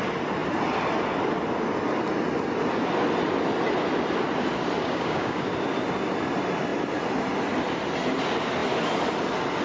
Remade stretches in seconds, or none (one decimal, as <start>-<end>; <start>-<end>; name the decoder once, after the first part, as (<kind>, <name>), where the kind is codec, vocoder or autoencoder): 4.8-5.5 (codec, DAC)